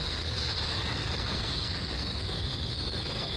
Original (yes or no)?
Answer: no